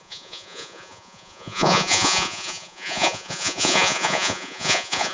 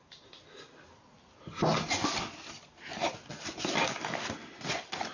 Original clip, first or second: second